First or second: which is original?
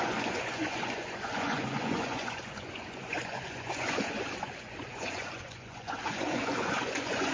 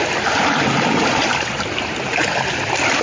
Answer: second